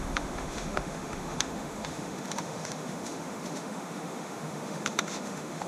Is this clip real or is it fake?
fake